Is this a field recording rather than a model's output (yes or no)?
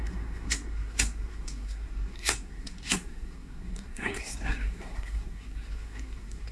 no